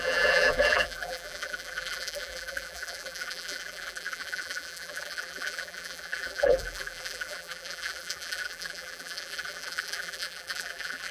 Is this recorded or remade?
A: remade